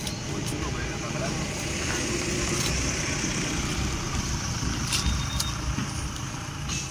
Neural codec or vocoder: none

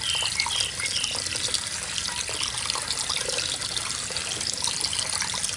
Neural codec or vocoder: none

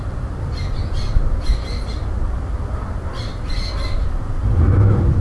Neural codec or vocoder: vocoder, BigVGAN v2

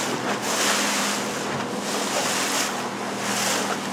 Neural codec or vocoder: none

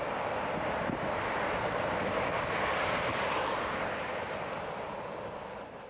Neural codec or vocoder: vocoder, BigVGAN v2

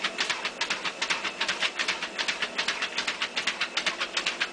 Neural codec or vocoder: none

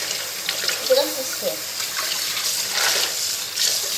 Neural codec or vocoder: none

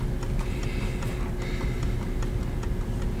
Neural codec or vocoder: none